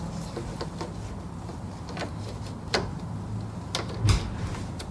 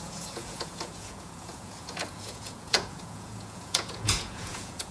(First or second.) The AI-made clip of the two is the second